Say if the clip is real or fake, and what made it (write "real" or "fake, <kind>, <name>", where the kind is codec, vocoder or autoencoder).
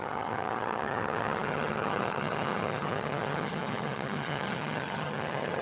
fake, vocoder, HiFi-GAN